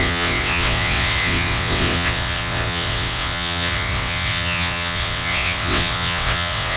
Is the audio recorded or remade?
remade